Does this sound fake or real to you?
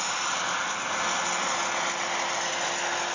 real